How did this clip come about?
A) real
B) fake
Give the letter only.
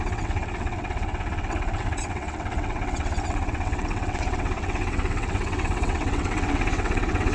B